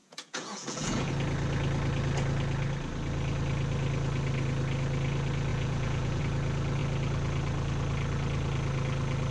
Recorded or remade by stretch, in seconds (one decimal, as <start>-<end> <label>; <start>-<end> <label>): 0.0-1.1 remade; 1.1-5.5 recorded; 5.5-6.2 remade; 6.2-9.3 recorded